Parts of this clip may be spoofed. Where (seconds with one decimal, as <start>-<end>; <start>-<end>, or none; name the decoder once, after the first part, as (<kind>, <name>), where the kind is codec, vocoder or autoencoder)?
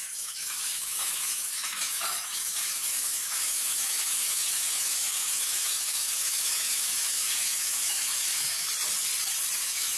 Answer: 0.0-8.7 (autoencoder, DAC-VAE); 9.6-10.0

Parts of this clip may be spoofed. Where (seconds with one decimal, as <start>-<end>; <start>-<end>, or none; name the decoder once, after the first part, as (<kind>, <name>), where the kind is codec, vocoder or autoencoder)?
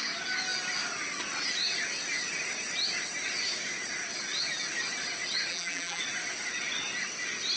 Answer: 5.5-6.0 (vocoder, BigVGAN v2)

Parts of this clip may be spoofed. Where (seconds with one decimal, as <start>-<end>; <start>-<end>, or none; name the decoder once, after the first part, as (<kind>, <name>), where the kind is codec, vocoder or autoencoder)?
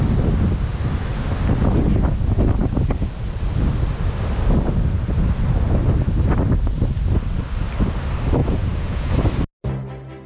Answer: 8.4-9.1 (vocoder, Vocos)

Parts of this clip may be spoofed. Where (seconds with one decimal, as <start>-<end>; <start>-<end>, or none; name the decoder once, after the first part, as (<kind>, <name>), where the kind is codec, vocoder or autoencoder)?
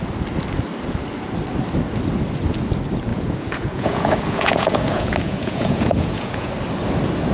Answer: 3.1-6.5 (vocoder, Vocos)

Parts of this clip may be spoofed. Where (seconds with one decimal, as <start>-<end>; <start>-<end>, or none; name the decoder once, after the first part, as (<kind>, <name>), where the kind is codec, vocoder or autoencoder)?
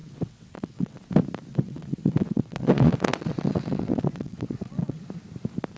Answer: 0.0-1.1 (vocoder, WaveNeXt); 1.5-5.0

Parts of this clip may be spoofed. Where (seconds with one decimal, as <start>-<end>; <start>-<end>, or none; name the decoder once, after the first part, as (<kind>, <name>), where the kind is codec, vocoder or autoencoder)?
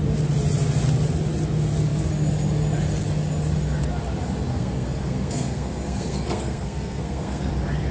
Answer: 4.5-7.5 (codec, SNAC)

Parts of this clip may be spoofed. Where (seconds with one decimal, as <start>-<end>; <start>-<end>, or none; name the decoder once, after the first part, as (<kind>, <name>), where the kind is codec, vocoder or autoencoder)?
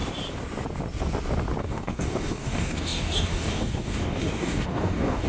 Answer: 1.6-5.3 (codec, DAC)